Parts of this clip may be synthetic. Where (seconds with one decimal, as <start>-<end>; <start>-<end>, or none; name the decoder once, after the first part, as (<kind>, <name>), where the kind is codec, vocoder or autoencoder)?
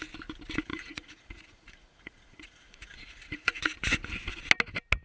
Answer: 0.7-3.6 (vocoder, Vocos)